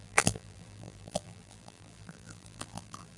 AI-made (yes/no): yes